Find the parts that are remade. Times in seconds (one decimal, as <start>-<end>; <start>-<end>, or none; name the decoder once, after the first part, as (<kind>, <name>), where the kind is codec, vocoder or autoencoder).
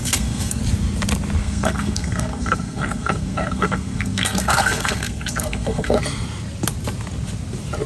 0.0-0.6 (codec, SNAC); 1.4-6.0